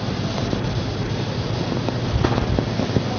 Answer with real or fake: real